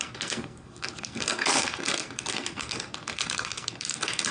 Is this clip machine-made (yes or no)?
yes